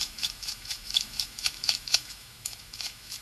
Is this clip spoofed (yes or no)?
yes